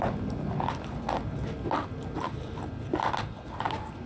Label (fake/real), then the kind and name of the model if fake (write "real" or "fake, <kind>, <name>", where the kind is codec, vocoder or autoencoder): real